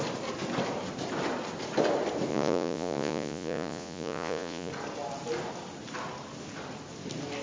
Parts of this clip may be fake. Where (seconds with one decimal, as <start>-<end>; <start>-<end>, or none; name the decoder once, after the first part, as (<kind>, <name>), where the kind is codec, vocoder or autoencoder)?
2.3-4.7 (vocoder, Vocos)